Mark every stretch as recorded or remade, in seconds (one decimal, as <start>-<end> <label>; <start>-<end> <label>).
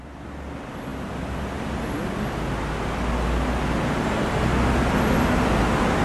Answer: 0.0-6.0 recorded